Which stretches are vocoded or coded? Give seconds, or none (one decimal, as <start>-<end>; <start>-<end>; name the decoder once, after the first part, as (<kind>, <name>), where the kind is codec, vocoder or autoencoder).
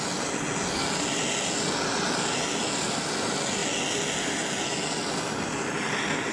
none